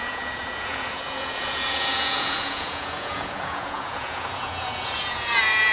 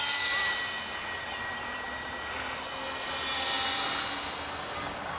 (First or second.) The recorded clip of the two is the second